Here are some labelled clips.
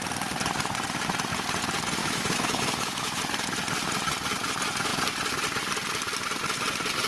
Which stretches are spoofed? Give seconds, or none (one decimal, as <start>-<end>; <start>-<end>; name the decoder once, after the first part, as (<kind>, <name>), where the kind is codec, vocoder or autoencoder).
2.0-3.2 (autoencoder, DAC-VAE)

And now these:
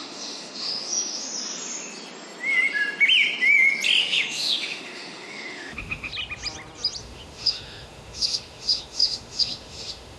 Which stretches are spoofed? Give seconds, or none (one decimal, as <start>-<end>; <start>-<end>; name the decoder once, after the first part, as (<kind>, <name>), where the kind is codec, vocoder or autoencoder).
0.0-1.3 (autoencoder, DAC-VAE); 4.0-6.1; 7.0-10.2

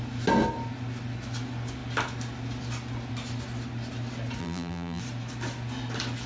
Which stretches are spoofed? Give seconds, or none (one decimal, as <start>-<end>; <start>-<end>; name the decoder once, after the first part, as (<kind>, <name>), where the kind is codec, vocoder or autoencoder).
4.4-5.0 (vocoder, BigVGAN v2)